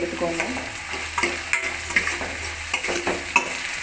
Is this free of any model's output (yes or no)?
yes